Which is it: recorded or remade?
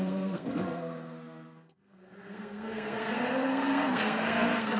remade